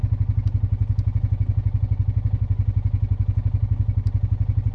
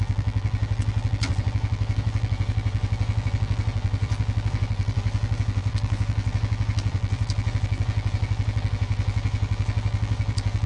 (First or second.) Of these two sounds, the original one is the first